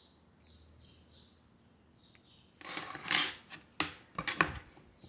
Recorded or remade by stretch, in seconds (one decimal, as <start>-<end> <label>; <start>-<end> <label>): 0.0-5.1 recorded